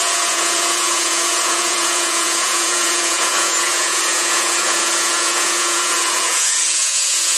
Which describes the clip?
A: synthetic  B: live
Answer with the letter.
A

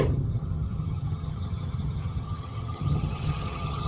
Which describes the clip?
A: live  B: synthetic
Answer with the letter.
B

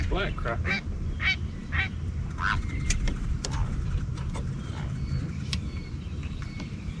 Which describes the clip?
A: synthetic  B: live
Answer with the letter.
A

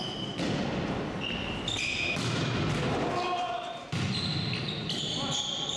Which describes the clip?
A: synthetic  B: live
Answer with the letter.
B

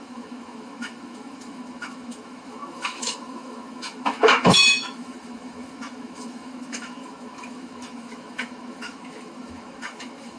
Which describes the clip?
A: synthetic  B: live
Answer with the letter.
A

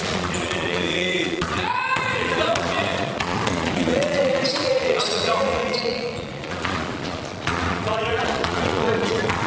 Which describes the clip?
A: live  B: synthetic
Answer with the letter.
B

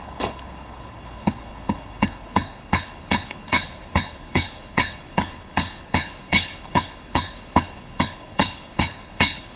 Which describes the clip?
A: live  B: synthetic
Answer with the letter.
B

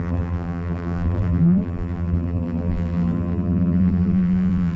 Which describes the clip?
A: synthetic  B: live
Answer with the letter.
A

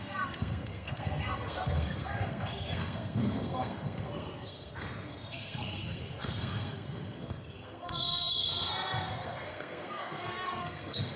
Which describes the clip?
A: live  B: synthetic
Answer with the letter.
B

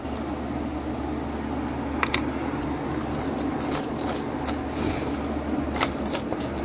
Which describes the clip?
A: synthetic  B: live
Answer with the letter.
B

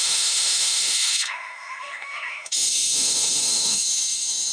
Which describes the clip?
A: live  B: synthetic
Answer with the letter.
B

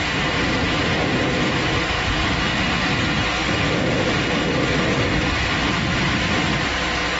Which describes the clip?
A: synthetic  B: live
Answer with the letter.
B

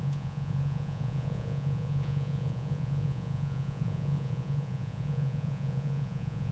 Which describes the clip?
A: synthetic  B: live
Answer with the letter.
A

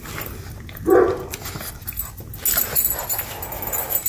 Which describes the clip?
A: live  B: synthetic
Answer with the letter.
A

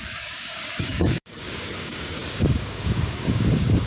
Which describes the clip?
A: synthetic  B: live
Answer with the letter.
A